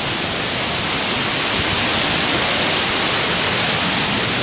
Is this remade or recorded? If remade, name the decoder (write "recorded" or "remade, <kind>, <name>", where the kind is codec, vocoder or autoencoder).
recorded